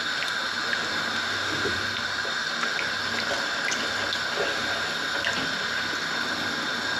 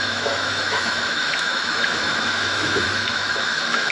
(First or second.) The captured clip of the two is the first